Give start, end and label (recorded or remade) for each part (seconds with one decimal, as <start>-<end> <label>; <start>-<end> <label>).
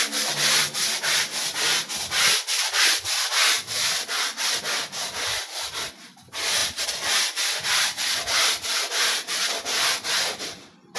0.0-11.0 recorded